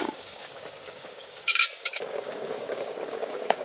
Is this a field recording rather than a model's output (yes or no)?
no